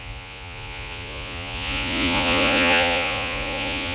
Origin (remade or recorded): remade